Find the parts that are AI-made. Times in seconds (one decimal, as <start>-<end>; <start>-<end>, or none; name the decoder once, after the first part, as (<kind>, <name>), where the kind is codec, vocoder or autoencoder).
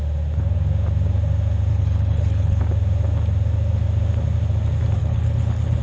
1.7-2.6 (codec, HILCodec); 5.0-5.8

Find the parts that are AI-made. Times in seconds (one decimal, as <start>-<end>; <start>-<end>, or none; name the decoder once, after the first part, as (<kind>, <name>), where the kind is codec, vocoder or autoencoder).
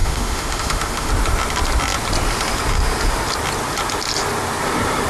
0.0-1.1 (autoencoder, DAC-VAE)